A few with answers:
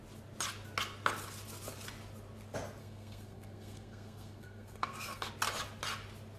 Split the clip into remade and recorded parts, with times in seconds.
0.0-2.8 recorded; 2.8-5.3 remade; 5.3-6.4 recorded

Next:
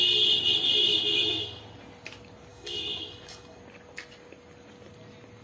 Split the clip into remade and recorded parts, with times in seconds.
0.0-0.8 recorded; 0.8-1.6 remade; 1.6-2.5 recorded; 2.5-3.6 remade; 3.6-5.4 recorded

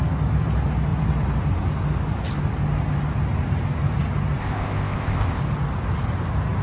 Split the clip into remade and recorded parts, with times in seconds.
0.0-4.4 recorded; 4.4-5.4 remade; 5.4-6.6 recorded